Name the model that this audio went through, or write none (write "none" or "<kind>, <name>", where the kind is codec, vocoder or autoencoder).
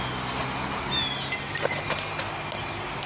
none